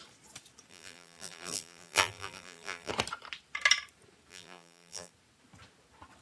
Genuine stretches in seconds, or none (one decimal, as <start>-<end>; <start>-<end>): 0.0-0.7; 2.9-4.3; 5.1-6.2